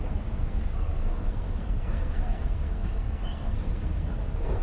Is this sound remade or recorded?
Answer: remade